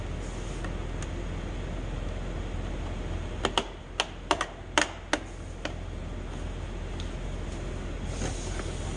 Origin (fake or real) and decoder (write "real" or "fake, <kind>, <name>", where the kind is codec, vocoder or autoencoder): real